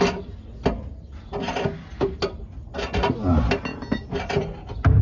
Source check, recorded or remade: recorded